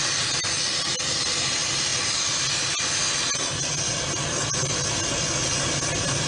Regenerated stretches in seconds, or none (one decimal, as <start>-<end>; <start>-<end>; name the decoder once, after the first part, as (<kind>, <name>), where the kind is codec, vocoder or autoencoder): none